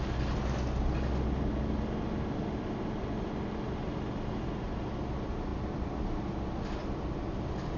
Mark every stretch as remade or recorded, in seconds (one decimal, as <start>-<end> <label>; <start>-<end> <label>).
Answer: 0.0-5.5 recorded; 5.5-6.1 remade; 6.1-7.8 recorded